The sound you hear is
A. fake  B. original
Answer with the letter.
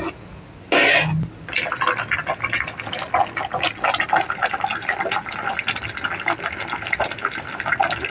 B